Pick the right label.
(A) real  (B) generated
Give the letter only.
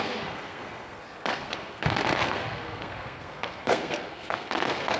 B